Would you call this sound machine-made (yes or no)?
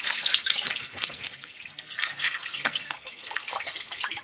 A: yes